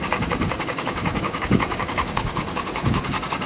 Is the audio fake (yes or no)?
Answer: yes